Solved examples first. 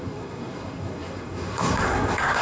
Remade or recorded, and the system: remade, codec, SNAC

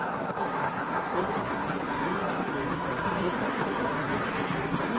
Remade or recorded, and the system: remade, codec, SNAC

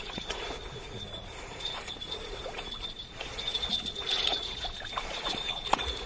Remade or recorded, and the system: remade, vocoder, Vocos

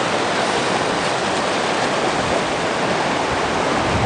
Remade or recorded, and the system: recorded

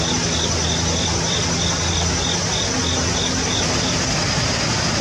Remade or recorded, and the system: recorded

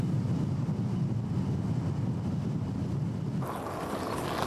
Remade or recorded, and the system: recorded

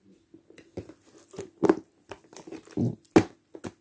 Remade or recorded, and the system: recorded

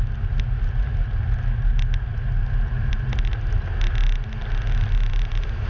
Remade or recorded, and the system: recorded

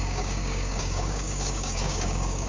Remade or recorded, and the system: remade, codec, DAC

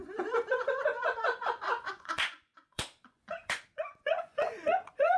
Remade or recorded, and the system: remade, vocoder, Vocos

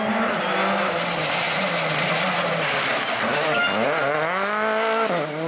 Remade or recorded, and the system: recorded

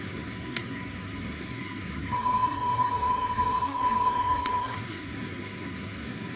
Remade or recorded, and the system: remade, codec, SNAC